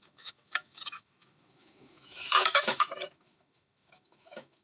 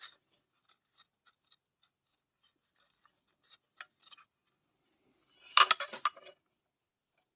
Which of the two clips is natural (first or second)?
second